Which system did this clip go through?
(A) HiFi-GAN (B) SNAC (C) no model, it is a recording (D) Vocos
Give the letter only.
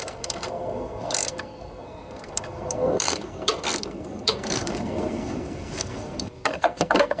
B